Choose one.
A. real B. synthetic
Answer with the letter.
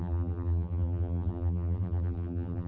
B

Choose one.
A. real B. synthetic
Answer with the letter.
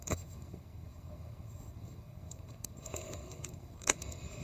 B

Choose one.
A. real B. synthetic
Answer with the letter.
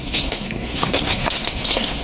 B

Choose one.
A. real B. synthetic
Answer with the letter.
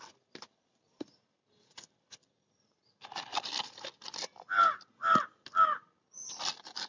B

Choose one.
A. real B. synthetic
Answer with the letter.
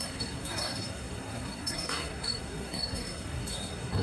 B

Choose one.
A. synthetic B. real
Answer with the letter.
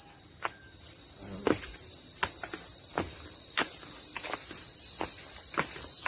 B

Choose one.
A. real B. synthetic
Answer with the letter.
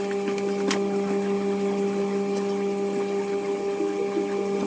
A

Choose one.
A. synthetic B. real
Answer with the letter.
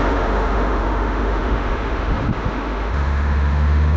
A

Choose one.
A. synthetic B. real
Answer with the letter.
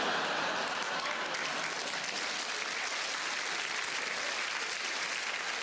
B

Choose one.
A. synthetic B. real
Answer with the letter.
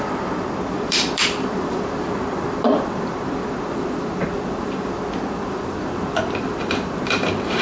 A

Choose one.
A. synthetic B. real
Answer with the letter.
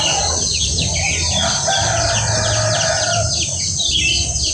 B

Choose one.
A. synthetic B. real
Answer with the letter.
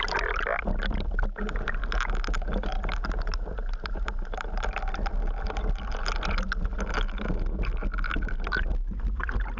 B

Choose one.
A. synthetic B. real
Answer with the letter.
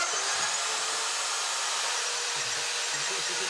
B